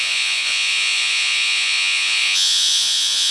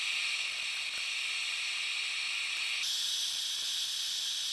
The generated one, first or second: first